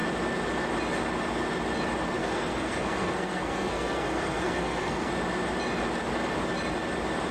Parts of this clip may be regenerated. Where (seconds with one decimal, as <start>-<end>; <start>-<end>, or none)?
2.2-5.1